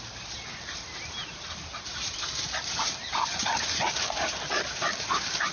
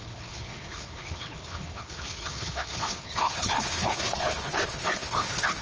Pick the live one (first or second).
first